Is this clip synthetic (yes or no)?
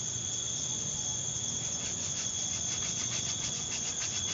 yes